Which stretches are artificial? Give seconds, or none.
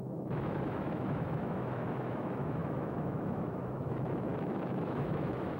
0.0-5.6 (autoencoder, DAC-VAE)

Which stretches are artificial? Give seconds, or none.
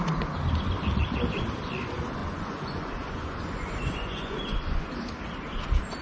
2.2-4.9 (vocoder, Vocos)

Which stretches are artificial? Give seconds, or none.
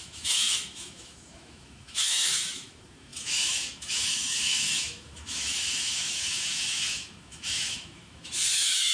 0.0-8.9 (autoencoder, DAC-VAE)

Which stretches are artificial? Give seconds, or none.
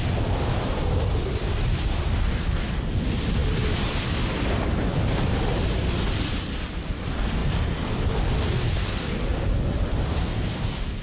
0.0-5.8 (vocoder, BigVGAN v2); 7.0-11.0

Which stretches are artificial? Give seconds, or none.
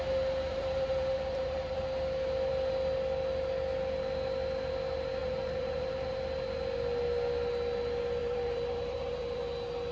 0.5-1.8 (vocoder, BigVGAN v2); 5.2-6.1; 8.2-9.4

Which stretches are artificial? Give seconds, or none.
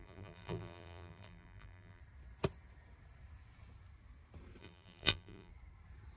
0.0-2.0 (vocoder, BigVGAN v2); 4.6-5.5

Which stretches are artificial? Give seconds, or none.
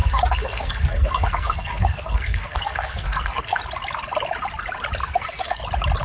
0.0-3.6 (codec, SNAC); 5.0-5.6